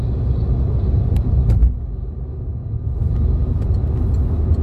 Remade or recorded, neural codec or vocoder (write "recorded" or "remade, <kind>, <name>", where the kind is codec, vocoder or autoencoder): recorded